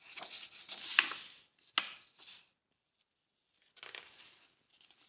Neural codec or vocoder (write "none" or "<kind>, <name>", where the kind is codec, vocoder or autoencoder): none